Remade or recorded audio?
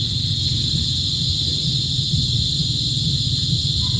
recorded